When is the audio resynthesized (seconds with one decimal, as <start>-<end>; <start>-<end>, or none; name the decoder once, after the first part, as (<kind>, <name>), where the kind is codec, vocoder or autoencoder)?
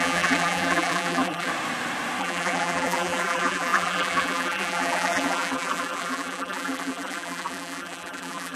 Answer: 0.0-1.5 (vocoder, BigVGAN v2); 2.2-8.6